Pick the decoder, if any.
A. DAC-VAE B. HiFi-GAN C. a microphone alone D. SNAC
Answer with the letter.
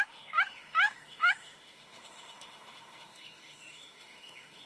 A